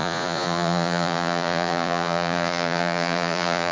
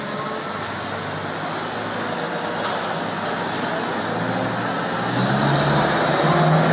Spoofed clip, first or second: first